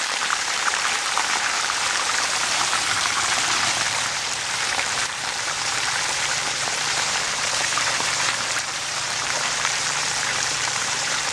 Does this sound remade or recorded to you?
remade